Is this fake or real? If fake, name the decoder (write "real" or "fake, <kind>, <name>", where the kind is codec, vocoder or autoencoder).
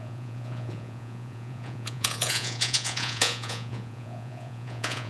fake, vocoder, Vocos